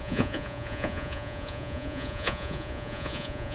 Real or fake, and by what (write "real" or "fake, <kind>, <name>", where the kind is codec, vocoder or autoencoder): fake, vocoder, Vocos